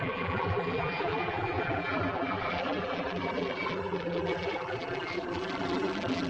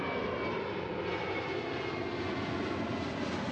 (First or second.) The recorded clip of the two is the second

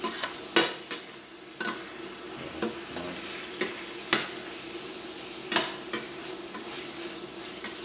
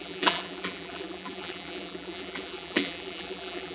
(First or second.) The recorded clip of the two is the first